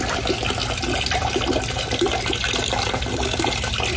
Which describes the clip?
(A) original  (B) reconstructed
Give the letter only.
A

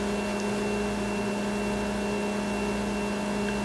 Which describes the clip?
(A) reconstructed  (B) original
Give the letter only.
B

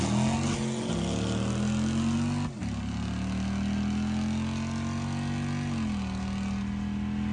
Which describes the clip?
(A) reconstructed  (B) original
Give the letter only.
B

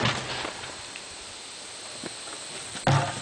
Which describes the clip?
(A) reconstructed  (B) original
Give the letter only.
B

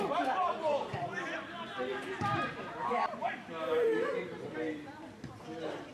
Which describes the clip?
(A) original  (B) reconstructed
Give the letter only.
B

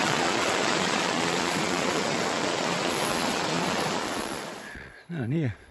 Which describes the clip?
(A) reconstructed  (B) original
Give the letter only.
A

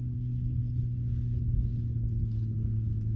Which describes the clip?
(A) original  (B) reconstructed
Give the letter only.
A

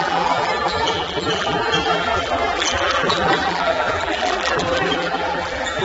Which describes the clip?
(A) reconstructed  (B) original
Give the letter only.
A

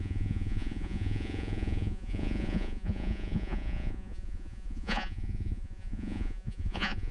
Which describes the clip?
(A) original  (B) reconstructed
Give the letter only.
B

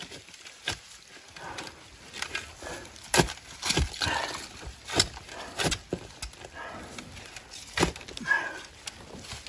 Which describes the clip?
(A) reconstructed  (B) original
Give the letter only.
B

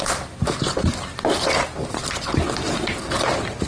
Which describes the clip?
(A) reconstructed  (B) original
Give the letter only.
B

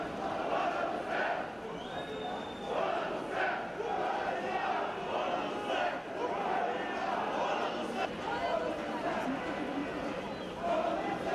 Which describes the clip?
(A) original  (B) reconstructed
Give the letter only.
A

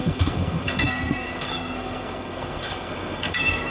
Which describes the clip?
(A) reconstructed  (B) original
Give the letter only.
A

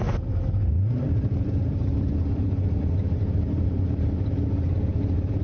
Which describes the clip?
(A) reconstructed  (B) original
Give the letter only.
A